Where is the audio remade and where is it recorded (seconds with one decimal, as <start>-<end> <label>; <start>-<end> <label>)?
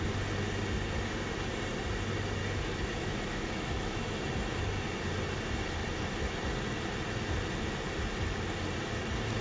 0.0-2.4 recorded; 2.4-4.3 remade; 4.3-9.4 recorded